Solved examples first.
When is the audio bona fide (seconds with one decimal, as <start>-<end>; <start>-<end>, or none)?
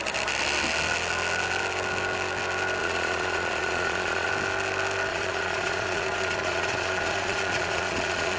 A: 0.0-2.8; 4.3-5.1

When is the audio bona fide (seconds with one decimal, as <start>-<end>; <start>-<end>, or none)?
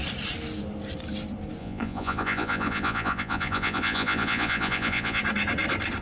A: 0.0-1.6; 5.2-6.0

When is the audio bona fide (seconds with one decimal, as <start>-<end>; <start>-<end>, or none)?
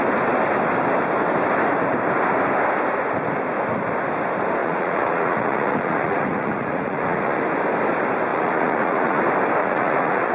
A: 0.0-4.6; 7.4-8.3; 9.2-9.6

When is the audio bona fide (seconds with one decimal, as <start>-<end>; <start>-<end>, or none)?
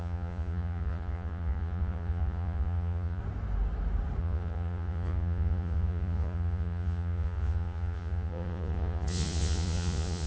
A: 3.2-4.2